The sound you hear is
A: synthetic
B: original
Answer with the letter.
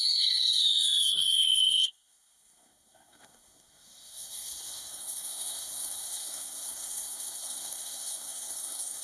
A